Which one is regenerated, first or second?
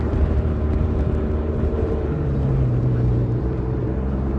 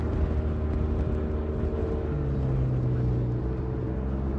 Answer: first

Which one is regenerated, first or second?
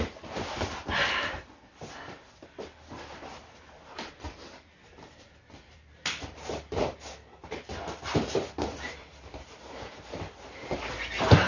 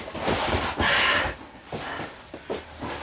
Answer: first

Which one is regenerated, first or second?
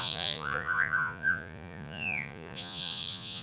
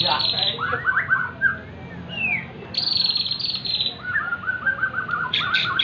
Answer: first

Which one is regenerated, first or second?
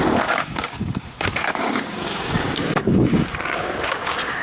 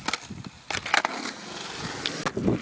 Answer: first